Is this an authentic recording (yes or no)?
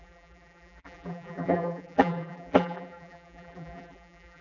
no